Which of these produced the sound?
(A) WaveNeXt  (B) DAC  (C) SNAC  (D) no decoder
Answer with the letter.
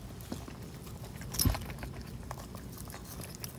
D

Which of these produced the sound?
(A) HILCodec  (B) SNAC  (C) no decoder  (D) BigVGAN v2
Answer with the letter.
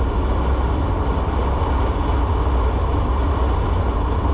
C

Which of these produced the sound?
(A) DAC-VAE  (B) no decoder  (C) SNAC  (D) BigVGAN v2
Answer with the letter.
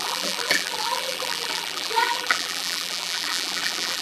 D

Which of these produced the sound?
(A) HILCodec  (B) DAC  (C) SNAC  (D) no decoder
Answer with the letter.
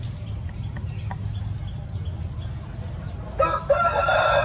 D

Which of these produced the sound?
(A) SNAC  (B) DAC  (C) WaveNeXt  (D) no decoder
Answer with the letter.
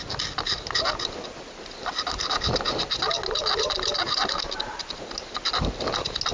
D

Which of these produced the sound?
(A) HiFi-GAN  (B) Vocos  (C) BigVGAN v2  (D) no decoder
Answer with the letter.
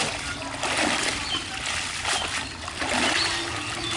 D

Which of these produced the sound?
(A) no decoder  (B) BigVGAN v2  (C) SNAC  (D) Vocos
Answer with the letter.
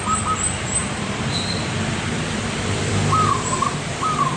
B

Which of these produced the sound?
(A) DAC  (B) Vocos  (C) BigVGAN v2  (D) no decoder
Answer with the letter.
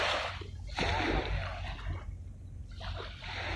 D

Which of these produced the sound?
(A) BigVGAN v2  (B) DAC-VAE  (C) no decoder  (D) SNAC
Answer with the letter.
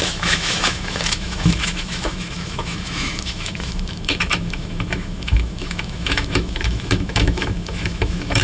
B